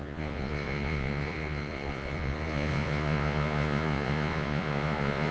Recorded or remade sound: remade